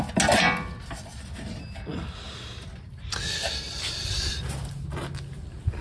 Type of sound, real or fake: real